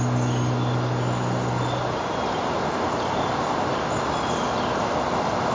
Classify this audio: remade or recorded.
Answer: recorded